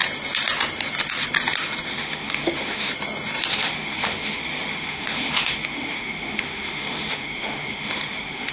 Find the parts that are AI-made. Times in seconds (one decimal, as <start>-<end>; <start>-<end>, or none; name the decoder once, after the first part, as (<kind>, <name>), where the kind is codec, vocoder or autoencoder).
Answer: 1.9-2.9 (autoencoder, DAC-VAE); 3.5-8.5